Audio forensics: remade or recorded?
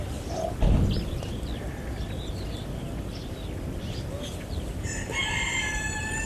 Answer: recorded